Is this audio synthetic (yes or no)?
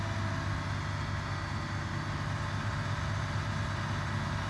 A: no